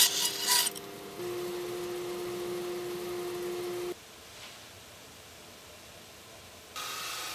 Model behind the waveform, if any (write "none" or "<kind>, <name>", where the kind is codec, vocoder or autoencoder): none